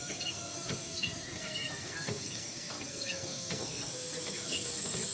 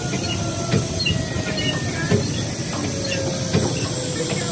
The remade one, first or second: first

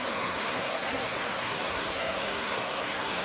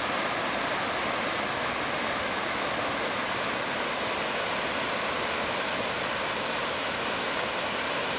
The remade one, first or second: first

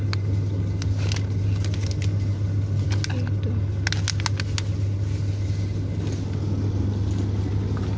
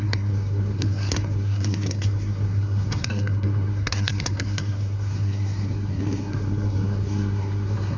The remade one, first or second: second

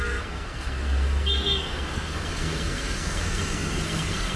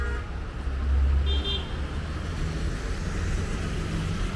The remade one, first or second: first